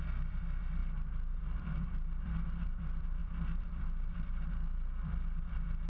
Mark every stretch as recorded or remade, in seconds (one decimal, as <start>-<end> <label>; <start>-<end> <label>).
0.0-0.8 remade; 0.8-1.4 recorded; 1.4-5.9 remade